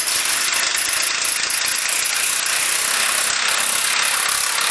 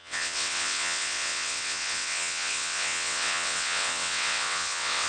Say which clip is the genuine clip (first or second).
first